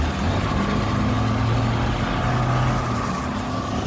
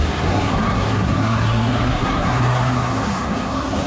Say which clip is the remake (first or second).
second